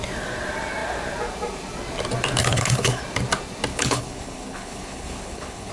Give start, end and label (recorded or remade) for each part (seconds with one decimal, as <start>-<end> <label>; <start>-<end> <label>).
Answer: 0.0-2.4 recorded; 2.4-3.0 remade; 3.0-3.7 recorded; 3.7-5.7 remade